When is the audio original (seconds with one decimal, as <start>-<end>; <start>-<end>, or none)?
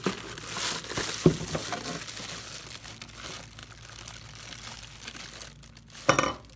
0.0-6.6